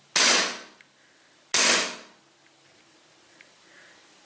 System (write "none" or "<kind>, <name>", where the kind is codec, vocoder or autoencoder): none